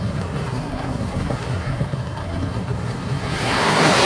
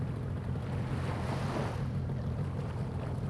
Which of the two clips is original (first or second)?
second